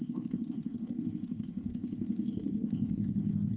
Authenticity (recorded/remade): remade